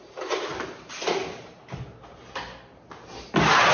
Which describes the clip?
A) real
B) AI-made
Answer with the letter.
A